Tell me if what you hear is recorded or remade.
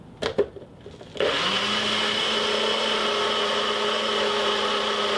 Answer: recorded